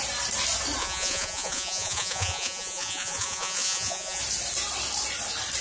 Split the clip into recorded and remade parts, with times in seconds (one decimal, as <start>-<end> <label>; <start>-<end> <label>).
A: 0.0-0.8 recorded; 0.8-4.2 remade; 4.2-5.6 recorded